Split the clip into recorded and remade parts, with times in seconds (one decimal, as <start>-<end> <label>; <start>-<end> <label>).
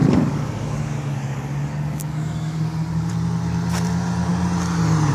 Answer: 0.0-3.1 remade; 3.1-5.1 recorded